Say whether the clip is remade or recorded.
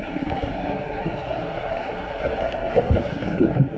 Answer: remade